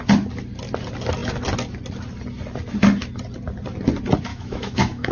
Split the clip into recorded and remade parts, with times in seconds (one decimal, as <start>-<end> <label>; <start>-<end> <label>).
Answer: 0.0-4.3 recorded; 4.3-5.1 remade